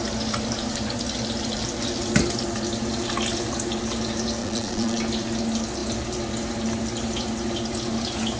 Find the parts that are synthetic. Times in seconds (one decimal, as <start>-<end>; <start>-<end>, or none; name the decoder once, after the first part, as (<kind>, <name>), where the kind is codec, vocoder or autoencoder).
4.4-5.0 (vocoder, Vocos)